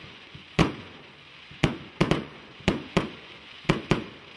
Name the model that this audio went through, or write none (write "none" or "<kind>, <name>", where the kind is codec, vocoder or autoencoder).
vocoder, Vocos